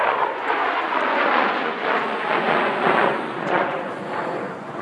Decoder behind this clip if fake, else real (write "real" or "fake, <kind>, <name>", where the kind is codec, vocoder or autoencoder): fake, vocoder, Vocos